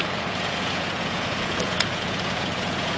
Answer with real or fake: fake